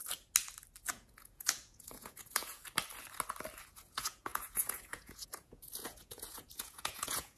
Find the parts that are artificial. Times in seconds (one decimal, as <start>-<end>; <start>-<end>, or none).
0.9-2.6; 3.6-7.4